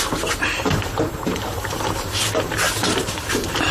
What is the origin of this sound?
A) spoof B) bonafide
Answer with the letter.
A